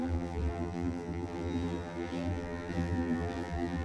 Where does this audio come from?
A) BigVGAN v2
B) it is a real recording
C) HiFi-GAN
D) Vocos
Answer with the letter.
A